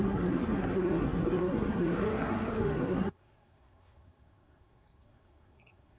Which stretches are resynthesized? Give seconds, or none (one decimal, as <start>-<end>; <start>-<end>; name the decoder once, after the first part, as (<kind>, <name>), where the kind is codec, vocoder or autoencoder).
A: 0.0-6.0 (codec, SNAC)